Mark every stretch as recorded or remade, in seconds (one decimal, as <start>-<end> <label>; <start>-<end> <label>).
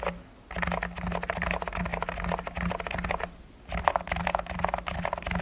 0.0-5.4 recorded